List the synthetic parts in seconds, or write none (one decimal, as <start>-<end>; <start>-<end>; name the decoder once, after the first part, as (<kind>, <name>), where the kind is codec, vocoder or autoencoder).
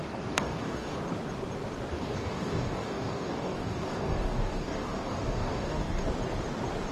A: 0.0-1.0 (codec, DAC); 1.9-6.0